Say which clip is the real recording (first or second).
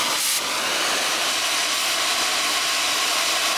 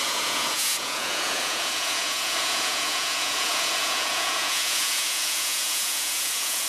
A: first